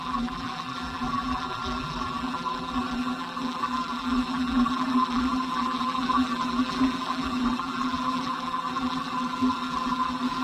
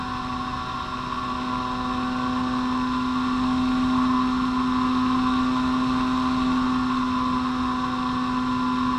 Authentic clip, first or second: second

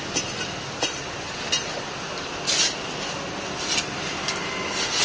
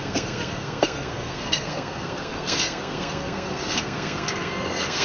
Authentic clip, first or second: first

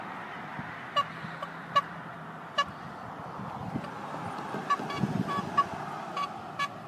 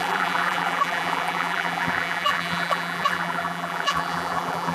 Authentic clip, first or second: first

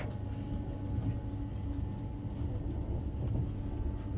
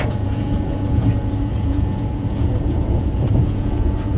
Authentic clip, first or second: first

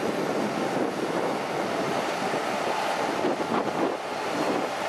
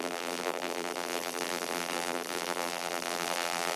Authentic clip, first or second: first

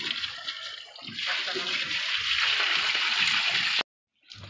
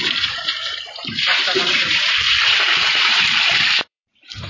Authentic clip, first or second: first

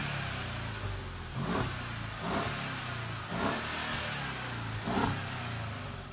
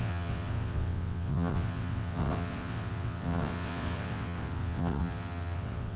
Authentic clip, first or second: first